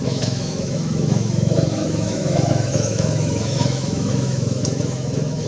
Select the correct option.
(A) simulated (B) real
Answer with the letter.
A